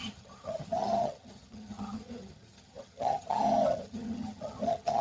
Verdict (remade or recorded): remade